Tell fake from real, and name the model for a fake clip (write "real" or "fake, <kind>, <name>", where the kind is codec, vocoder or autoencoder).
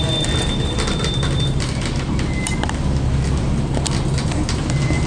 real